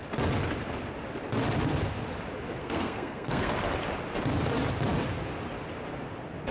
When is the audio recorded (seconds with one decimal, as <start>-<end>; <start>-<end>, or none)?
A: 0.0-2.6; 3.5-6.5